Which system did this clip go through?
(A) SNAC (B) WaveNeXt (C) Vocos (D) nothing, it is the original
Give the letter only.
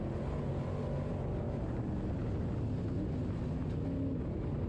D